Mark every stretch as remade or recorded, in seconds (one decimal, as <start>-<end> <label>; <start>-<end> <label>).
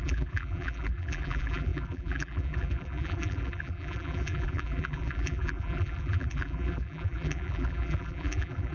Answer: 0.0-8.7 remade